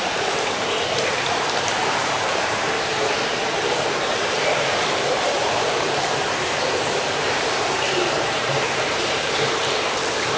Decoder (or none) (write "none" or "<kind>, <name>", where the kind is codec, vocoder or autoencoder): vocoder, BigVGAN v2